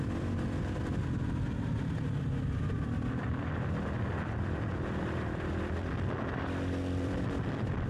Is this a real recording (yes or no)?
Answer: no